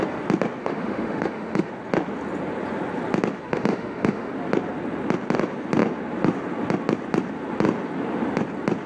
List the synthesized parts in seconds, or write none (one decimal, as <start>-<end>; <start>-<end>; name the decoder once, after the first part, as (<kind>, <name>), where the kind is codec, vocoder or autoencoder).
0.6-1.7 (autoencoder, DAC-VAE); 3.5-4.3